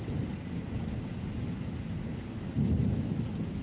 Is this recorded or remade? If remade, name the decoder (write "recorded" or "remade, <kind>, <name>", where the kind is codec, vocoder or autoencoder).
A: recorded